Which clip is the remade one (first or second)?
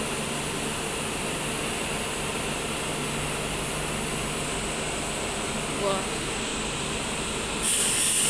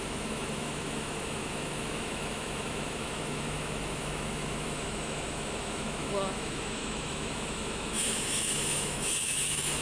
second